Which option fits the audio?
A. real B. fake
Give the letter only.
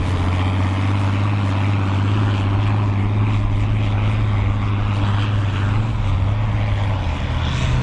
A